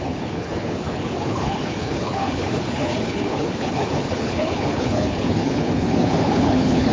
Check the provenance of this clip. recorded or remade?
remade